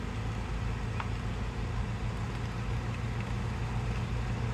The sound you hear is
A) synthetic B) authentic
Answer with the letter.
B